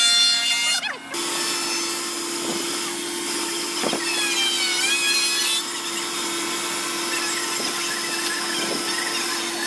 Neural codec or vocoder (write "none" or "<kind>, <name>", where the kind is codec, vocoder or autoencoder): none